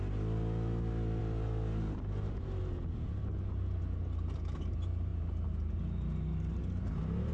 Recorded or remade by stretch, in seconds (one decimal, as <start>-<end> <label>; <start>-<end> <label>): 0.0-7.3 recorded